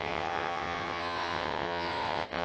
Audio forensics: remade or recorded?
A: remade